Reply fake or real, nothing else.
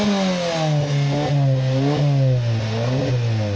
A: real